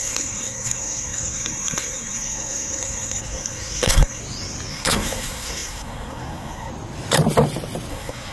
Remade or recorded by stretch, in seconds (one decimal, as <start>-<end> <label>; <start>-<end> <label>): 0.0-4.2 remade; 4.2-4.7 recorded; 4.7-6.7 remade; 6.7-7.9 recorded; 7.9-8.3 remade

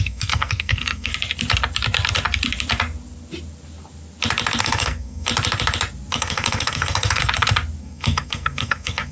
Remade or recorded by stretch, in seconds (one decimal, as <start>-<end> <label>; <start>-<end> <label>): 0.0-1.1 remade; 1.1-4.6 recorded; 4.6-5.3 remade; 5.3-6.1 recorded; 6.1-7.2 remade; 7.2-7.8 recorded; 7.8-9.1 remade

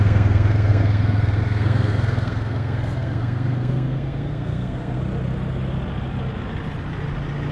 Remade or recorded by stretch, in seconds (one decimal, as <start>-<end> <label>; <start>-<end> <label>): 0.0-5.0 remade; 5.0-7.5 recorded